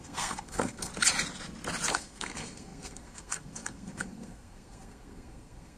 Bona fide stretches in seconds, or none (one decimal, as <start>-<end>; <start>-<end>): 0.9-1.9